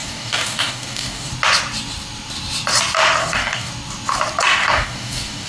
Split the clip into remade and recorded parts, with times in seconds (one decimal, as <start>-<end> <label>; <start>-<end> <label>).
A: 0.0-1.3 remade; 1.3-3.2 recorded; 3.2-3.7 remade; 3.7-4.6 recorded; 4.6-5.5 remade